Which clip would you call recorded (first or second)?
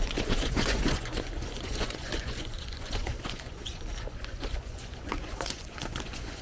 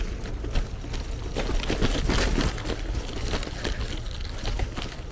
second